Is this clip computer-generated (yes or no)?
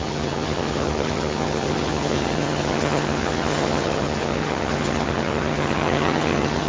yes